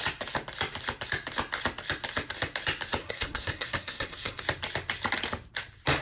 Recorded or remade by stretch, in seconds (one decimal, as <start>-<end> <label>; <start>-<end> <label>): 0.0-3.0 recorded; 3.0-4.4 remade; 4.4-6.0 recorded